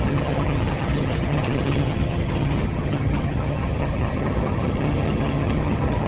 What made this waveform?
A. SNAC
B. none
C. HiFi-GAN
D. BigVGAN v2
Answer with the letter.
C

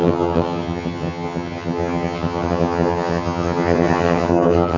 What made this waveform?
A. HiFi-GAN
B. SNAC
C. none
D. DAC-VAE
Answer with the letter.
A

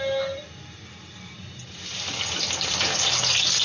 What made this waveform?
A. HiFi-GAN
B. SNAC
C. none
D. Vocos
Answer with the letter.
C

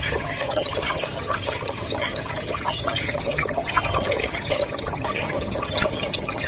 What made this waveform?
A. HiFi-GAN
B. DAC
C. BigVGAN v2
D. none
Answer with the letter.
A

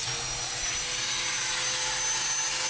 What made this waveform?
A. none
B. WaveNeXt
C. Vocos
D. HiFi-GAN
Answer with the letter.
A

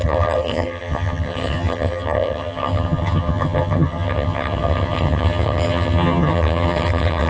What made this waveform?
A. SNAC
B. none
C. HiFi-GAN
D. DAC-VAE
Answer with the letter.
C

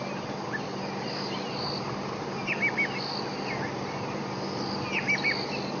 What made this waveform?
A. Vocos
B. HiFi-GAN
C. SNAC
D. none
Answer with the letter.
D